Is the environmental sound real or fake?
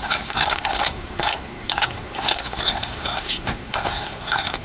fake